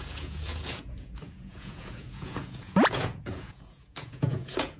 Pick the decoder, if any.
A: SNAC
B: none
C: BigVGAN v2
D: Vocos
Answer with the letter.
D